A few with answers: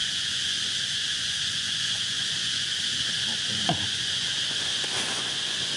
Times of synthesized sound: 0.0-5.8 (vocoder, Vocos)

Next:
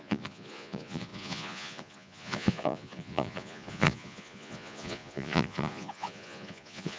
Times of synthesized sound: 0.0-7.0 (vocoder, Vocos)

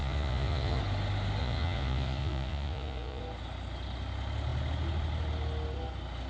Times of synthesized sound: 0.0-0.8 (vocoder, Vocos); 1.4-3.2

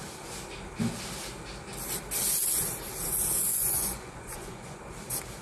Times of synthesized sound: 3.5-4.8 (vocoder, Vocos)

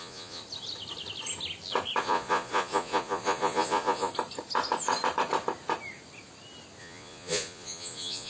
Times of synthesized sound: 0.0-0.4 (vocoder, Vocos); 2.0-4.1; 6.8-8.3

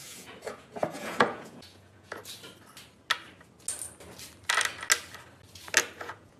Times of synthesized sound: 0.0-2.2 (vocoder, Vocos); 6.0-6.4

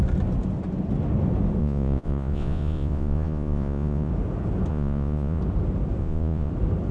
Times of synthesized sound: 1.6-4.1 (vocoder, Vocos); 4.7-5.4; 6.0-6.5

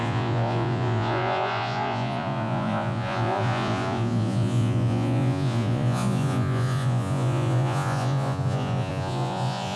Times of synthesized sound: 0.0-9.8 (vocoder, Vocos)